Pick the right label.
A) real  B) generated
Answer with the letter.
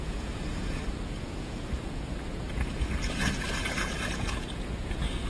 B